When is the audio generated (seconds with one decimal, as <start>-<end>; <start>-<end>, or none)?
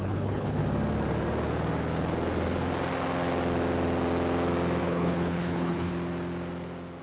0.0-0.6; 4.8-5.9